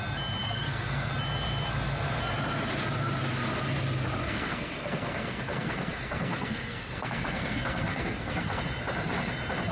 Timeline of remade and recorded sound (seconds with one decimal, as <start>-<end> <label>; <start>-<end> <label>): 0.0-0.4 recorded; 0.4-1.1 remade; 1.1-4.2 recorded; 4.2-8.6 remade; 8.6-9.7 recorded